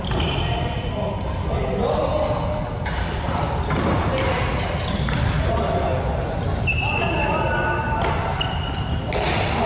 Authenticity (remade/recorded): recorded